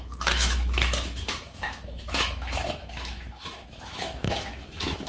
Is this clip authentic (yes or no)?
no